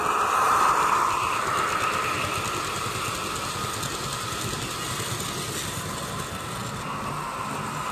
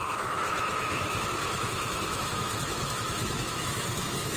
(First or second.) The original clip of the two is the first